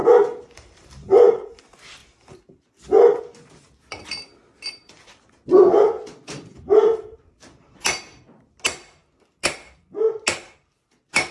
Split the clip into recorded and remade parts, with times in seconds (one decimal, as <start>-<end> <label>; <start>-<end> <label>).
0.0-1.6 remade; 1.6-6.5 recorded; 6.5-8.0 remade; 8.0-11.3 recorded